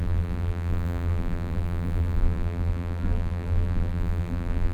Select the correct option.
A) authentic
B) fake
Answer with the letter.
B